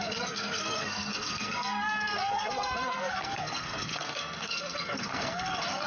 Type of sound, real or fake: fake